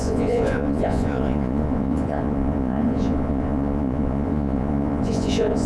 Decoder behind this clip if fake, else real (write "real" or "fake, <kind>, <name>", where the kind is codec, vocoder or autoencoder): fake, vocoder, Vocos